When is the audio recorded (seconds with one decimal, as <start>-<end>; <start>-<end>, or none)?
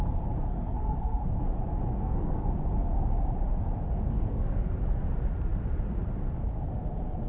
0.0-0.5; 1.2-1.9; 2.5-4.1; 4.6-7.3